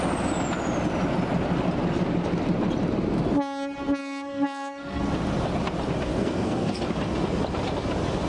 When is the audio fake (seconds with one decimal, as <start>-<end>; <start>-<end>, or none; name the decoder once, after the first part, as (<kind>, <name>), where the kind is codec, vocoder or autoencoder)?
4.0-5.0 (codec, SNAC); 6.1-6.8